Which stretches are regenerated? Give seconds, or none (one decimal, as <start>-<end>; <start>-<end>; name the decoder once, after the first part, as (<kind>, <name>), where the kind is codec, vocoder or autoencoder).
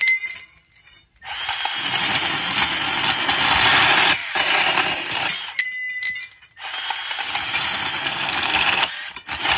8.0-8.9 (codec, SNAC)